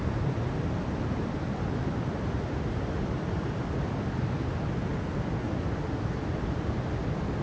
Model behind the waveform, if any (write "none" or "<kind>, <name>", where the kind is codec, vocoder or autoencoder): none